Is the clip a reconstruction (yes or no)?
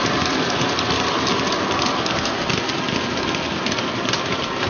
no